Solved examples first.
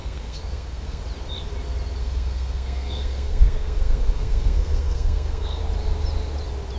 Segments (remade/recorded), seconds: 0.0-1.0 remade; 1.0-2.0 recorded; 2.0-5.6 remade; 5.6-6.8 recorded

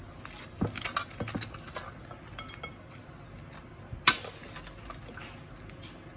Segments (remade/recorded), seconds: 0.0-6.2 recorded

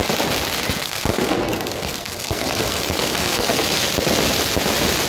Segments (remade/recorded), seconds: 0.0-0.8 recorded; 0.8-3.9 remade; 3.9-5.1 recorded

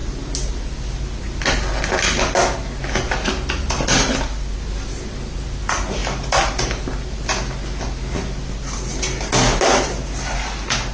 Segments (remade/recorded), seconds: 0.0-10.9 recorded